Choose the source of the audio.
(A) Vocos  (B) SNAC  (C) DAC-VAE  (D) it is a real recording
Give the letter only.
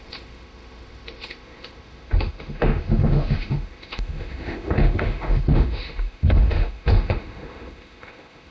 C